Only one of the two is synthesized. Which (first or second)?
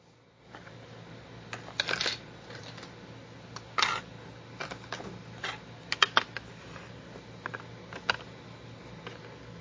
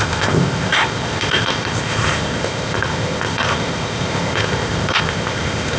second